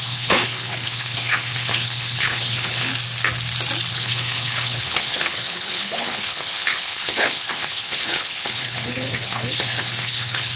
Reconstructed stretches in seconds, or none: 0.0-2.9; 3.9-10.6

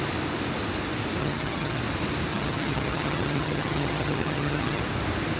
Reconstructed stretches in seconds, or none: 1.2-1.8; 2.3-4.8

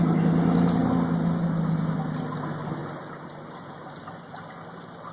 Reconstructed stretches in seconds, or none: none

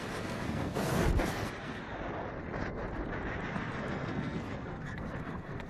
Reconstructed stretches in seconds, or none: 0.0-1.8; 3.5-5.7

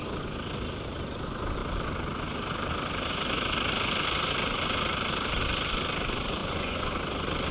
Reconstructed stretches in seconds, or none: 6.4-6.9

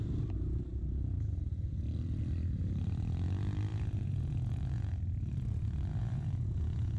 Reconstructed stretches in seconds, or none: 3.7-4.9; 6.0-7.0